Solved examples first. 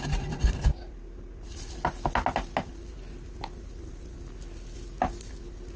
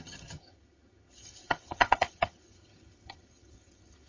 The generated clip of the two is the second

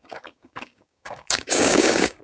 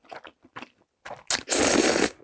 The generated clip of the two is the first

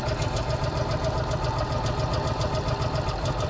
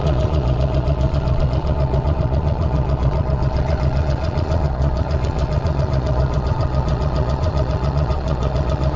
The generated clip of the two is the second